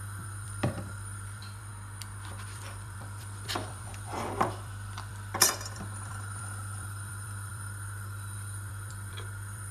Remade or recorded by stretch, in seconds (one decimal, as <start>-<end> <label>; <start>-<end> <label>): 0.0-1.7 remade; 1.7-2.3 recorded; 2.3-9.7 remade